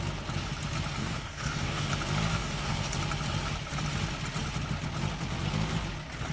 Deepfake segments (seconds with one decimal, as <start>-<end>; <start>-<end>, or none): 1.0-1.9; 2.3-2.9